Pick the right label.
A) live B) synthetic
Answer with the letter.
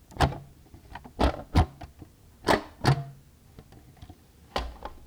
A